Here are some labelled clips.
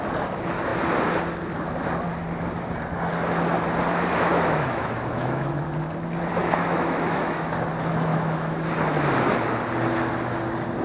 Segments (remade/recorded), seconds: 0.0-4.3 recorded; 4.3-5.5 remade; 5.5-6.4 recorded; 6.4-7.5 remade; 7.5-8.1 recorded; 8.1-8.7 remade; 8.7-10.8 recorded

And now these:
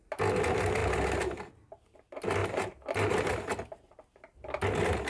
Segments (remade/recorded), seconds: 0.0-2.4 recorded; 2.4-3.2 remade; 3.2-5.1 recorded